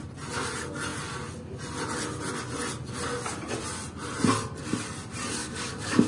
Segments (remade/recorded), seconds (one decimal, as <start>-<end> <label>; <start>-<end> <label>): 0.0-5.4 recorded; 5.4-6.1 remade